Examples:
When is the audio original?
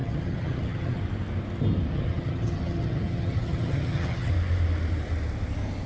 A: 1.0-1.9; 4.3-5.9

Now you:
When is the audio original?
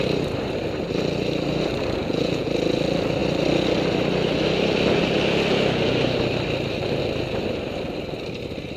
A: 0.0-2.0; 2.5-8.8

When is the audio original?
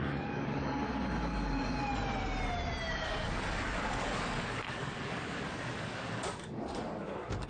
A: 1.9-2.9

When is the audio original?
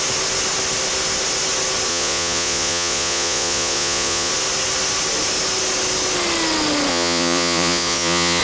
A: 0.0-1.9; 4.3-6.9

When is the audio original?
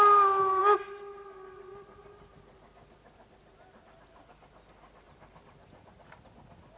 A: 0.0-6.8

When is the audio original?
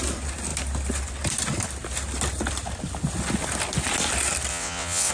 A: 0.0-4.5